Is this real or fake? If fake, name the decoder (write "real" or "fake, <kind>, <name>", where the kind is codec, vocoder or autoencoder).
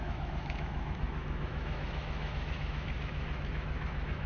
fake, autoencoder, DAC-VAE